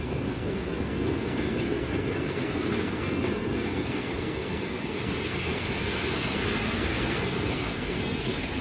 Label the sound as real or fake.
fake